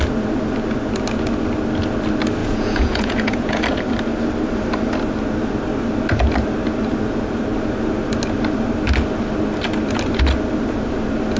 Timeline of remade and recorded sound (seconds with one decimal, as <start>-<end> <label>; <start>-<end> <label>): 0.0-2.4 recorded; 2.4-3.6 remade; 3.6-11.4 recorded